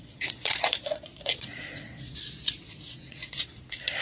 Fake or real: fake